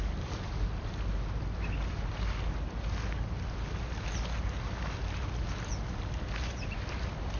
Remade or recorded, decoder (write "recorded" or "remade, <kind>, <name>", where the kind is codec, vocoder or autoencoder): recorded